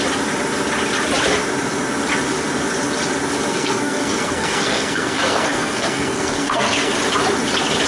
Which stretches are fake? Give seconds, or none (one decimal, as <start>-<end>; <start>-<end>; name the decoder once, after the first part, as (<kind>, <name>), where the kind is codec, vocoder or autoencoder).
3.5-6.9 (codec, SNAC)